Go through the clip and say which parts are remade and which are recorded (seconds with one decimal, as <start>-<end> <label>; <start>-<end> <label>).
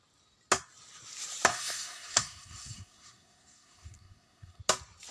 0.0-1.5 recorded; 1.5-4.6 remade; 4.6-5.1 recorded